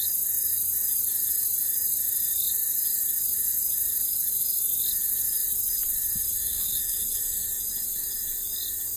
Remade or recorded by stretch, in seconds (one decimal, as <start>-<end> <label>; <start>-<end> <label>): 0.0-6.4 recorded; 6.4-7.2 remade; 7.2-9.0 recorded